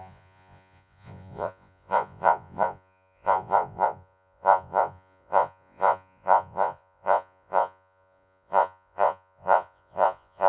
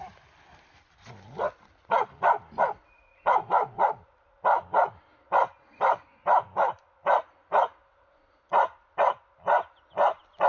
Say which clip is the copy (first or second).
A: first